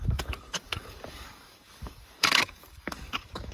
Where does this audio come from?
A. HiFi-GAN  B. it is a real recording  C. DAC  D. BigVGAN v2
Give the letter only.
C